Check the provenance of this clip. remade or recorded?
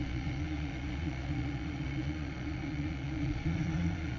remade